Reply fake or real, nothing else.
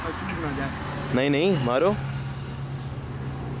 real